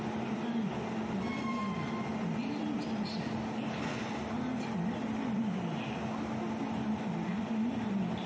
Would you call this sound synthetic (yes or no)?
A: no